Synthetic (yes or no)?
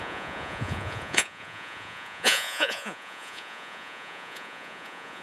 yes